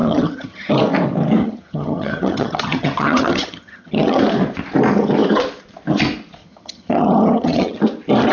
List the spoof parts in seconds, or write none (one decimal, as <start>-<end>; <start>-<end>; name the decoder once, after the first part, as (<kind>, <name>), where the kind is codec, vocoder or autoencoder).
0.0-0.7 (vocoder, HiFi-GAN); 1.4-4.2; 6.4-7.8